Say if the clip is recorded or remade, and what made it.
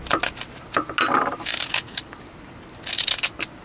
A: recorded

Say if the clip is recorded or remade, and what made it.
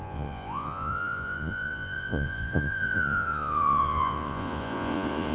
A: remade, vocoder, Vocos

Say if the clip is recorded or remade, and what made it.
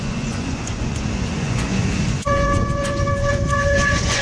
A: remade, vocoder, Vocos